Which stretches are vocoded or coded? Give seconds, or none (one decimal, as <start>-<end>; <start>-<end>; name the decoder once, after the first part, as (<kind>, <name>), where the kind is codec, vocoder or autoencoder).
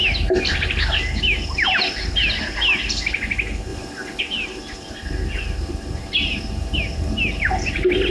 none